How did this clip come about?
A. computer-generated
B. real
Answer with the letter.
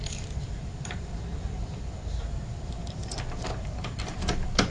A